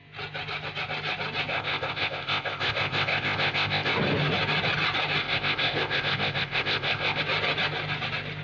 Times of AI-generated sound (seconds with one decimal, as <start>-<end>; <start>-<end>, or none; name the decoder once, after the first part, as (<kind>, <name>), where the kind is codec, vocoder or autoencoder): 1.5-3.9 (codec, ZipCodec); 5.2-7.2